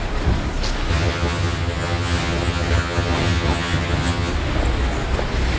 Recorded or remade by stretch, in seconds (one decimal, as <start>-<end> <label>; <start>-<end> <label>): 0.0-0.9 recorded; 0.9-4.3 remade; 4.3-5.6 recorded